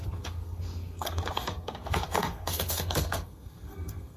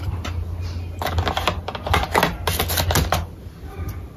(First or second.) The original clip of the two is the second